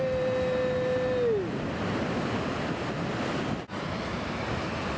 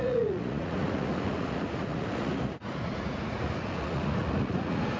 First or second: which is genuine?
first